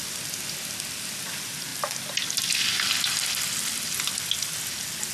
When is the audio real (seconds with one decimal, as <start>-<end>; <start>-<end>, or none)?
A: 0.0-5.1